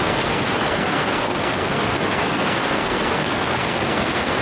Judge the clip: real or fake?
fake